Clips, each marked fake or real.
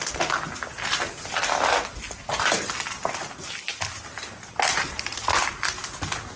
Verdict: real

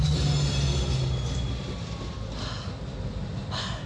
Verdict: real